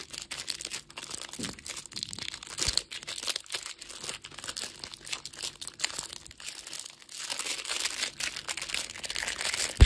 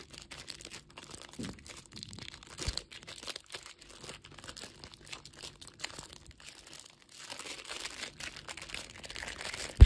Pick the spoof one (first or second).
second